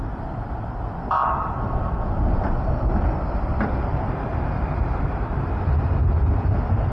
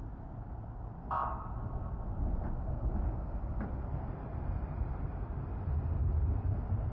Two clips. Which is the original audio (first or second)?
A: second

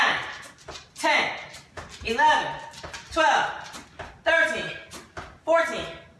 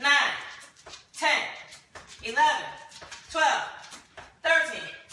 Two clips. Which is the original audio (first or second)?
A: first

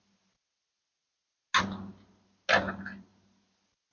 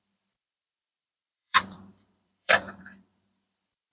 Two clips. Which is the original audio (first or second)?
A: first